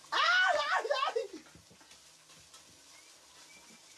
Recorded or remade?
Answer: recorded